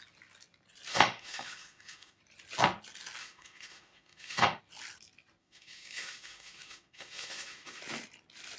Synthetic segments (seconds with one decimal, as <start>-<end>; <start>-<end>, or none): 0.9-2.2; 3.2-4.6; 5.4-7.8